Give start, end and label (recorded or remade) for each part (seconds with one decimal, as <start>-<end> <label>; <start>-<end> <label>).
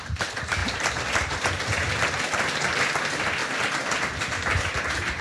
0.0-5.2 recorded